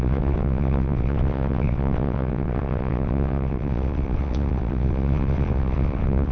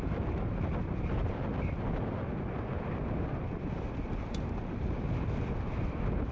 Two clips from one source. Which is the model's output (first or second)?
first